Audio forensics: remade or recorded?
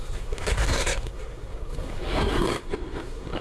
remade